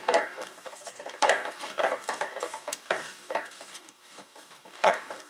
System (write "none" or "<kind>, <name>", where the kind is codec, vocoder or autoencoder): codec, DAC